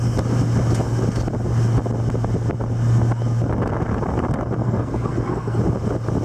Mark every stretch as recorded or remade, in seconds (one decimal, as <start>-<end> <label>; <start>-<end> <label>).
0.0-4.6 recorded; 4.6-5.6 remade; 5.6-6.2 recorded

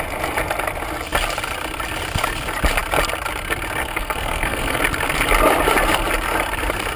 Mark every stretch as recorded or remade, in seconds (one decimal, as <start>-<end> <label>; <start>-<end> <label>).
0.0-3.8 recorded; 3.8-4.8 remade; 4.8-7.0 recorded